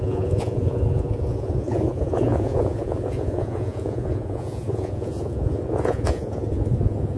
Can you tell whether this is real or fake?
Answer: fake